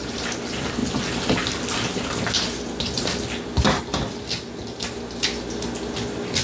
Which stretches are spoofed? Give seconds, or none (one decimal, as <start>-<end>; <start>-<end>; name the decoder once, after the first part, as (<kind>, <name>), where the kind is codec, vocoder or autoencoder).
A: none